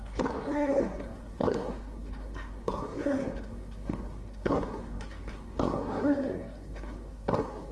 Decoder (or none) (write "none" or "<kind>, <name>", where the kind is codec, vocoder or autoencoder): codec, SNAC